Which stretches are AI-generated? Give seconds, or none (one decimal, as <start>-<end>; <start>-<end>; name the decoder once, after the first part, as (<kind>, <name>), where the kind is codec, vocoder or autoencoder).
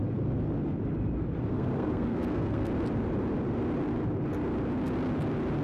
1.5-2.7 (codec, SNAC)